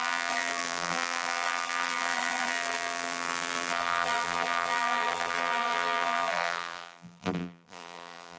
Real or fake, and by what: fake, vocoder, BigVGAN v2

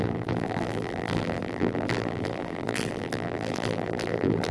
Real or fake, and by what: fake, vocoder, BigVGAN v2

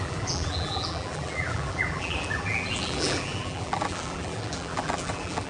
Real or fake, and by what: fake, vocoder, BigVGAN v2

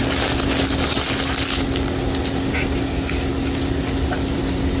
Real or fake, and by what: real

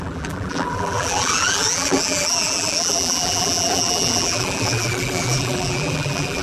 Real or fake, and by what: fake, vocoder, BigVGAN v2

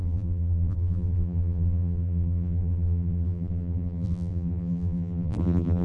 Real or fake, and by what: fake, vocoder, BigVGAN v2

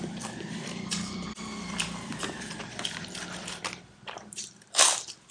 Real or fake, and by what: fake, vocoder, BigVGAN v2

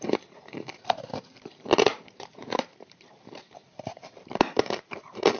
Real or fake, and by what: fake, vocoder, BigVGAN v2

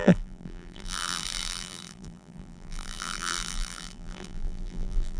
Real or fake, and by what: fake, vocoder, BigVGAN v2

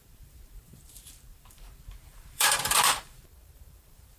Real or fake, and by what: fake, vocoder, BigVGAN v2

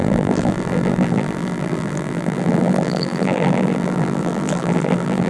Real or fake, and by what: fake, vocoder, BigVGAN v2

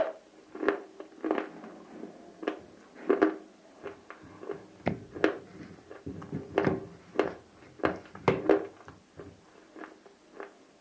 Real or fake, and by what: real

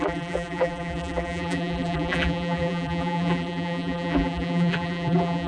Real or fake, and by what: fake, vocoder, BigVGAN v2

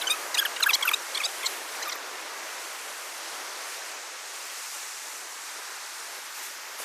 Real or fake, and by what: real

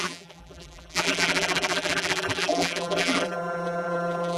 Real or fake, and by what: fake, vocoder, BigVGAN v2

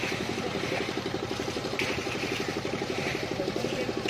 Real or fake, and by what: fake, vocoder, BigVGAN v2